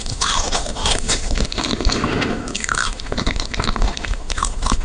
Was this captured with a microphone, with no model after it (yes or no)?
no